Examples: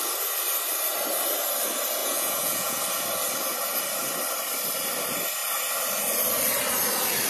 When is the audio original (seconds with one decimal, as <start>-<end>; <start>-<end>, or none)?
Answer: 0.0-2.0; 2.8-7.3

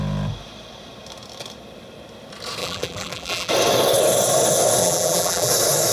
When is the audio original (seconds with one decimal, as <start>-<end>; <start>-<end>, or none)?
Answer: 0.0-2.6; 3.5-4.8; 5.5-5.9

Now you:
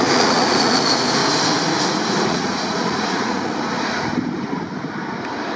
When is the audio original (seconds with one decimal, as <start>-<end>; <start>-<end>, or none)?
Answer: 1.2-2.3; 4.1-5.6